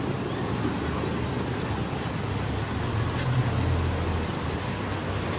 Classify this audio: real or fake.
real